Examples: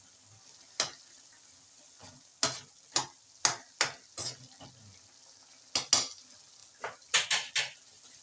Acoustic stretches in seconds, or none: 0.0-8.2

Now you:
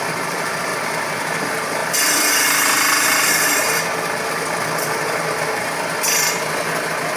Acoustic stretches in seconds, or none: 0.7-1.4

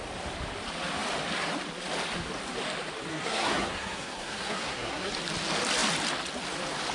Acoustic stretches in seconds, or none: 0.0-3.1; 5.1-6.9

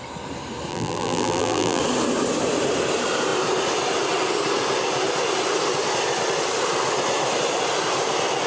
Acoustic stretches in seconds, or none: 0.0-0.7; 1.8-8.5